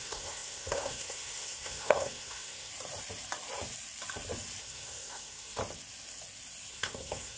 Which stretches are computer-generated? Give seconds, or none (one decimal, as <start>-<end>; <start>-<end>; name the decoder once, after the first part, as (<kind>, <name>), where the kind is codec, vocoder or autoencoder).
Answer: 0.0-2.7 (codec, SNAC); 4.6-5.6; 6.7-7.4